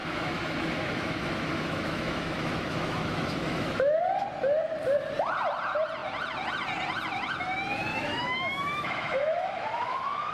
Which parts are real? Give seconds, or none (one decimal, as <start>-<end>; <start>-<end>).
4.0-7.9